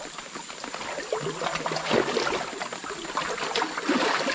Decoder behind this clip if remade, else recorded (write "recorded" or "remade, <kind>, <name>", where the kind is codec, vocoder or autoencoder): recorded